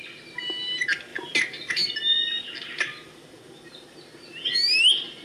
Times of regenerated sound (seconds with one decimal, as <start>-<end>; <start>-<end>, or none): none